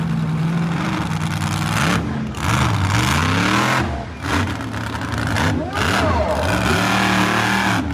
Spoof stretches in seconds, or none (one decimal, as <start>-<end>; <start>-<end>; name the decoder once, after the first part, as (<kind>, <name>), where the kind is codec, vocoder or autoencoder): none